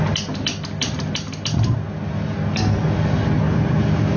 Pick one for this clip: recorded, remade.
recorded